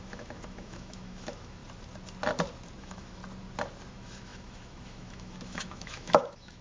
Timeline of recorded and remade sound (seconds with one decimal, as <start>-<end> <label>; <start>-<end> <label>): 0.0-1.6 remade; 1.6-2.8 recorded; 2.8-3.2 remade; 3.2-3.9 recorded; 3.9-6.6 remade